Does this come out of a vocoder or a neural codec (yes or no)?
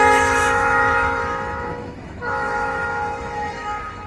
yes